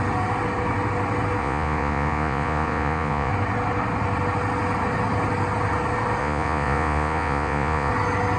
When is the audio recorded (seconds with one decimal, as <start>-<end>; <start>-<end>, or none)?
0.0-1.4; 3.3-6.2; 7.9-8.4